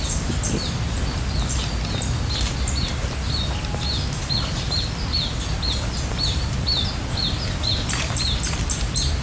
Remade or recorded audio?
recorded